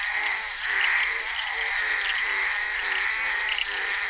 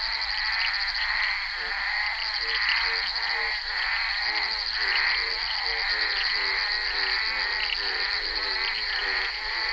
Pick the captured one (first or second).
second